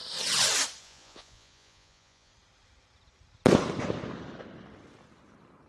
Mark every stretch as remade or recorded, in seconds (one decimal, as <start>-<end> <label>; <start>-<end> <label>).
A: 0.0-0.8 recorded; 0.8-2.3 remade; 2.3-5.7 recorded